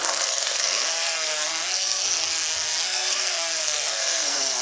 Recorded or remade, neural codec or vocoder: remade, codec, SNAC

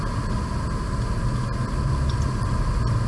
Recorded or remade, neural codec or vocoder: recorded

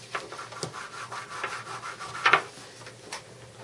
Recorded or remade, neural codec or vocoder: recorded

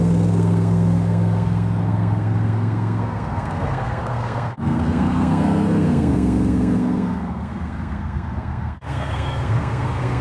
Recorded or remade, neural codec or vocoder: remade, codec, SNAC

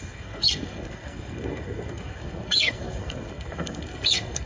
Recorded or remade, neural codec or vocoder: remade, codec, SNAC